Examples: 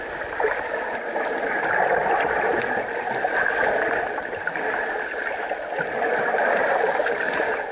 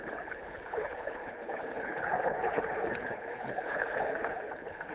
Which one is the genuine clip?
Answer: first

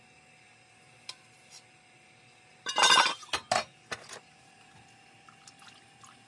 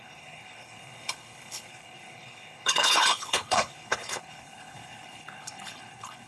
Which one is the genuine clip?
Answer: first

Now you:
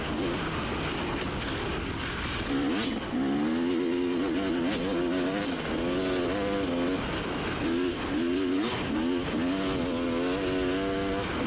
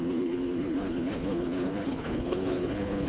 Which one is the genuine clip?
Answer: first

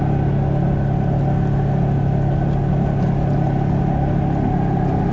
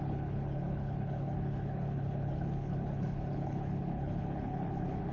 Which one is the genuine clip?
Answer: first